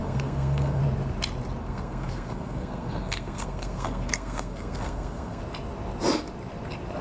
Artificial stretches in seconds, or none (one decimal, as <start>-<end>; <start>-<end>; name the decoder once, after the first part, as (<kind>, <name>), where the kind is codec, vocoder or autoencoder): 0.0-0.8 (codec, SNAC); 1.6-5.4